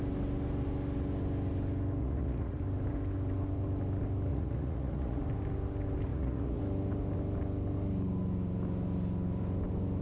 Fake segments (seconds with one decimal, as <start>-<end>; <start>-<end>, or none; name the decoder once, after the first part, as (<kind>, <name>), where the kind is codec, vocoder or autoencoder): 2.0-2.6 (vocoder, Vocos); 4.3-5.2; 6.1-6.6